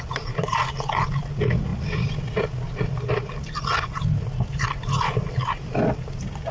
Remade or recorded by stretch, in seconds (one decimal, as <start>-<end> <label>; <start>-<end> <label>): 0.0-6.5 recorded

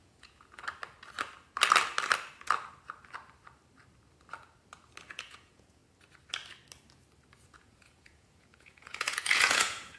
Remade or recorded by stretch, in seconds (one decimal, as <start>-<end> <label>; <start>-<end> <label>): 0.0-0.6 remade; 0.6-5.1 recorded; 5.1-5.8 remade; 5.8-7.4 recorded; 7.4-10.0 remade

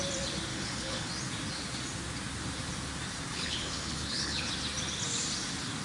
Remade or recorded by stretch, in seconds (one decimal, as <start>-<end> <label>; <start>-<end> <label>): 0.0-0.5 recorded; 0.5-1.1 remade; 1.1-3.3 recorded; 3.3-4.5 remade; 4.5-5.8 recorded

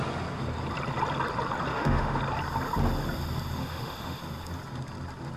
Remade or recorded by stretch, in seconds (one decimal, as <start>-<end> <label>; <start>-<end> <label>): 0.0-1.7 recorded; 1.7-2.2 remade; 2.2-3.6 recorded; 3.6-4.2 remade; 4.2-5.4 recorded

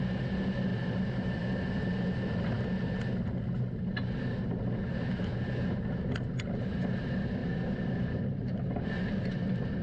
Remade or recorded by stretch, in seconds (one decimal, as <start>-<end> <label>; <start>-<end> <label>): 0.0-0.7 recorded; 0.7-1.4 remade; 1.4-7.4 recorded; 7.4-9.8 remade